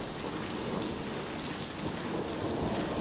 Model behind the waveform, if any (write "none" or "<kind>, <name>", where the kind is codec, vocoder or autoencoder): none